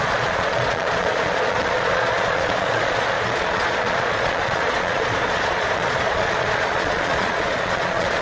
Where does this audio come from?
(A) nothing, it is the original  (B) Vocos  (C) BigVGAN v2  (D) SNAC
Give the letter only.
B